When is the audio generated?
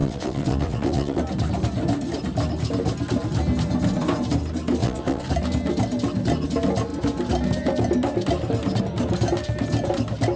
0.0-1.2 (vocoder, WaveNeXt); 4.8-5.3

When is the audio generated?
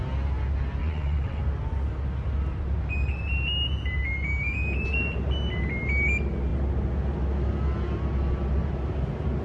0.8-1.4 (vocoder, WaveNeXt)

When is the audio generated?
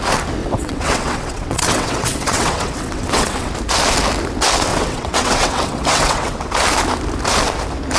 0.4-3.5 (vocoder, WaveNeXt); 4.7-6.5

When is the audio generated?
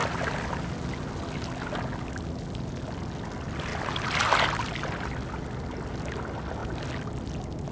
none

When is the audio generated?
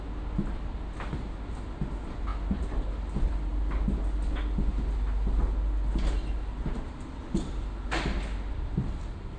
none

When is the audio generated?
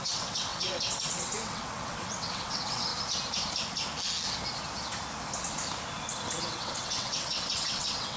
0.0-2.9 (vocoder, WaveNeXt); 6.5-8.2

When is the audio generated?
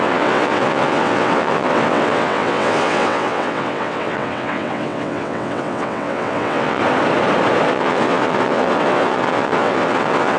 0.0-6.8 (vocoder, WaveNeXt); 7.7-10.4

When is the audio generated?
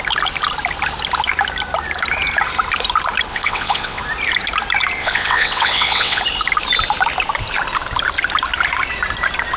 3.3-4.0 (vocoder, WaveNeXt); 5.0-6.2